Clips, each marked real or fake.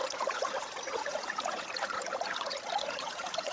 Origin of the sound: fake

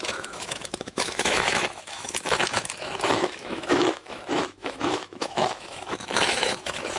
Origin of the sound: fake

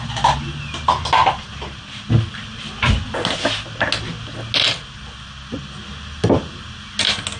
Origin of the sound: real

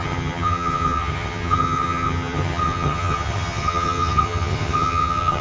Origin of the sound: fake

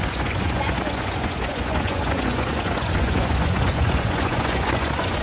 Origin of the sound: fake